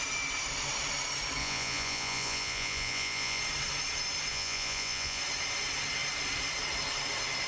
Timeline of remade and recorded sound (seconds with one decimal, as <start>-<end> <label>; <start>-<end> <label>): 0.0-1.4 recorded; 1.4-3.4 remade; 3.4-4.3 recorded; 4.3-5.2 remade; 5.2-7.5 recorded